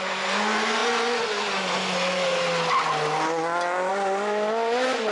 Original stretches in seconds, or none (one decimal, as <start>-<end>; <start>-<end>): 0.0-5.1